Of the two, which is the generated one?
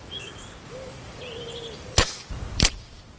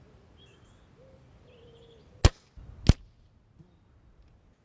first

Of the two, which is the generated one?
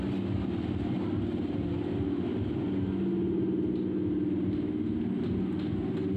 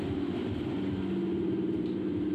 second